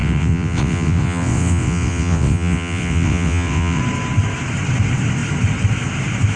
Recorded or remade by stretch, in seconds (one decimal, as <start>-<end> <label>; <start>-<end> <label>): 0.0-3.8 remade; 3.8-6.4 recorded